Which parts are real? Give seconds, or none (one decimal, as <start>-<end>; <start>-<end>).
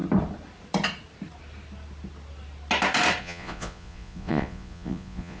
0.0-3.2